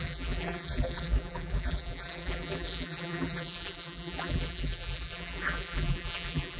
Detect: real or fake fake